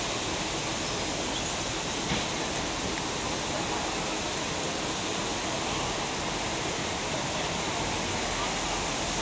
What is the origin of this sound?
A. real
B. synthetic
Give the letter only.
A